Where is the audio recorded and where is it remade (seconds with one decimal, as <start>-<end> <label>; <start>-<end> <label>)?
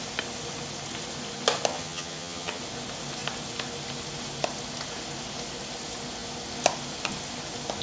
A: 0.0-1.7 recorded; 1.7-2.6 remade; 2.6-7.8 recorded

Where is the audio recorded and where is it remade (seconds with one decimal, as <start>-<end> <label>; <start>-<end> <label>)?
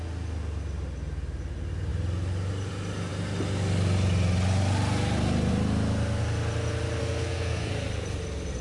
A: 0.0-7.0 recorded; 7.0-7.7 remade; 7.7-8.6 recorded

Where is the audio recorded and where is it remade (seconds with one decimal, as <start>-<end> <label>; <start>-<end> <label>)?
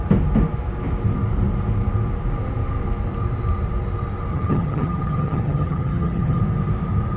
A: 0.0-4.3 recorded; 4.3-6.4 remade; 6.4-7.2 recorded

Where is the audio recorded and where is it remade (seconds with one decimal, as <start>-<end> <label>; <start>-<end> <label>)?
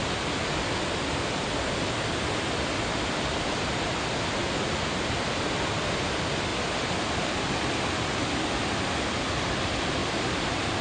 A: 0.0-0.5 recorded; 0.5-2.5 remade; 2.5-6.5 recorded; 6.5-7.5 remade; 7.5-10.0 recorded; 10.0-10.8 remade